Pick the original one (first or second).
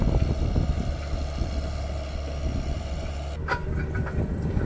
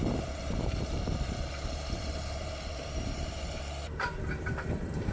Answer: first